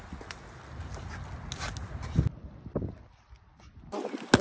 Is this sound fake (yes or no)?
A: no